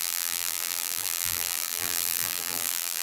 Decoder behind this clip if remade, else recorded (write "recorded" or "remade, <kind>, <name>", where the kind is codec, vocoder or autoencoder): remade, vocoder, BigVGAN v2